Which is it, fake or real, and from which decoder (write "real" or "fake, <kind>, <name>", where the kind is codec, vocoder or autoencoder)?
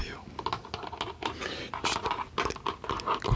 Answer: real